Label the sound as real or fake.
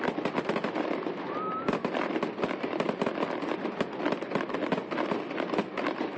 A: real